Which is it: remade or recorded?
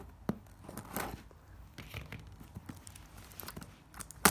recorded